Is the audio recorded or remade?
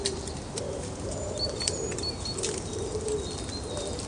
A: recorded